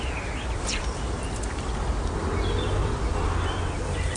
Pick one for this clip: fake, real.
real